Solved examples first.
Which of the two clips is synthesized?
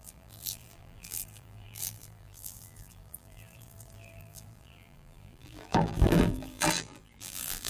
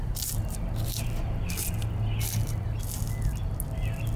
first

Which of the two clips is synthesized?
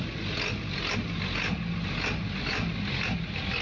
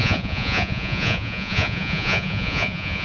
second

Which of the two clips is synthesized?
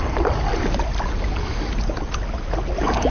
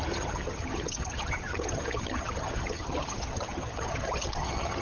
second